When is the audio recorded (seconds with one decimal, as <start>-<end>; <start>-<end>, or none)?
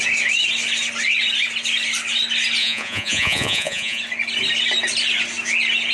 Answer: 0.0-2.6; 4.0-5.9